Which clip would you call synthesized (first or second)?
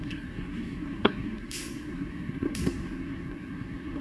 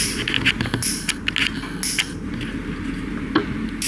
first